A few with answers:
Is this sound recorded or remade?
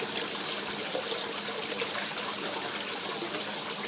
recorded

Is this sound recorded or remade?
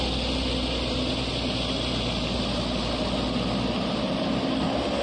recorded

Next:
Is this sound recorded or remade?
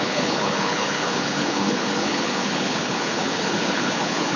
remade